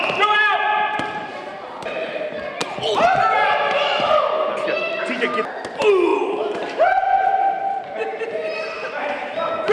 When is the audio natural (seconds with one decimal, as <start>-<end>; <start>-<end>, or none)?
0.0-1.3; 2.3-6.1; 9.1-9.7